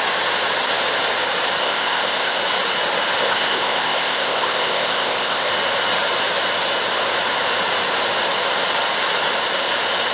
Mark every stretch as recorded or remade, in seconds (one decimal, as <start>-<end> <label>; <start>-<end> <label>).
0.0-1.6 recorded; 1.6-2.4 remade; 2.4-3.2 recorded; 3.2-5.5 remade; 5.5-10.1 recorded